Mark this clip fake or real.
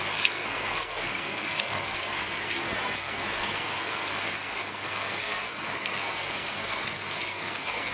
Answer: fake